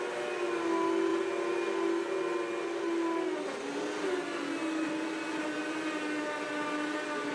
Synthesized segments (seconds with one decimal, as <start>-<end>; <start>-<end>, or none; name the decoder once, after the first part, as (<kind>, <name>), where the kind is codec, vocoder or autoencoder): none